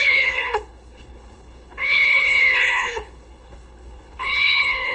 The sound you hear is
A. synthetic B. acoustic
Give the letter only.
A